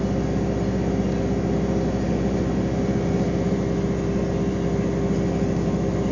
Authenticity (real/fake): real